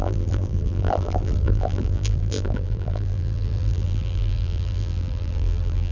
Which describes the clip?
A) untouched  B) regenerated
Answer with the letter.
B